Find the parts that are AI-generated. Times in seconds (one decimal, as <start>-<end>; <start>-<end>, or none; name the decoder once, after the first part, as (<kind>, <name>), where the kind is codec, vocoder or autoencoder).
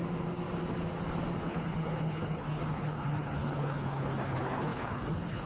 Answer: 1.4-5.5 (codec, HILCodec)